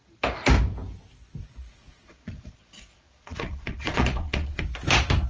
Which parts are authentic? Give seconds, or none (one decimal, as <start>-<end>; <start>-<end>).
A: 0.0-1.4; 4.6-5.3